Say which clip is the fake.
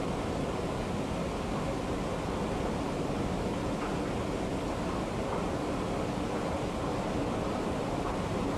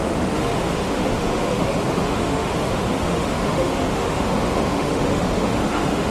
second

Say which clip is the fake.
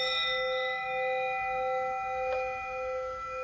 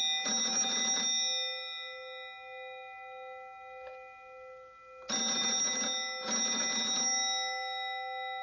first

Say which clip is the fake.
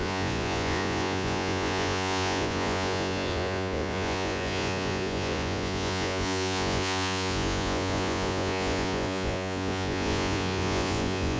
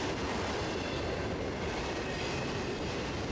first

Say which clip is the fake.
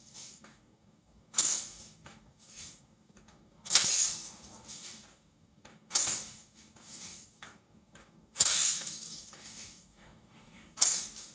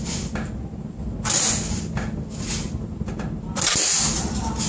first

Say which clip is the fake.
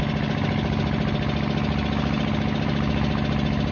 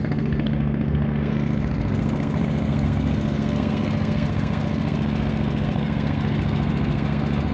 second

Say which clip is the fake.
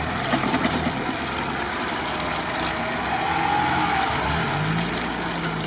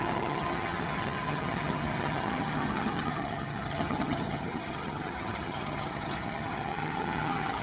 second